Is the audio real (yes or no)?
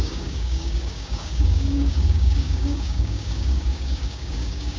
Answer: no